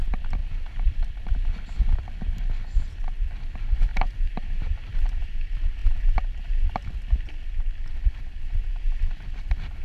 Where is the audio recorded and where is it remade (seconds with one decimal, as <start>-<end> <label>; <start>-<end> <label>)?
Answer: 0.0-0.4 recorded; 0.4-1.3 remade; 1.3-3.9 recorded; 3.9-5.2 remade; 5.2-9.8 recorded